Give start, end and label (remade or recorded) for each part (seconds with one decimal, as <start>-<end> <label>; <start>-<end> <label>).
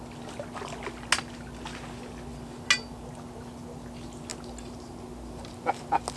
0.0-6.2 recorded